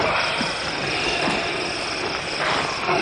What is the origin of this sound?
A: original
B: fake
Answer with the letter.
A